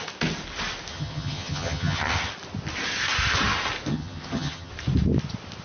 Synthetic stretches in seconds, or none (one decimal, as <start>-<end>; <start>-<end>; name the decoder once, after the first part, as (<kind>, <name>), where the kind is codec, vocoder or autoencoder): 0.9-2.3 (vocoder, HiFi-GAN); 3.9-4.7